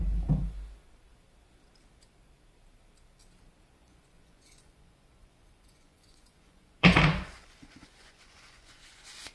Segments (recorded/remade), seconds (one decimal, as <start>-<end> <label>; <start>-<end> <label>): 0.0-3.8 recorded; 3.8-9.3 remade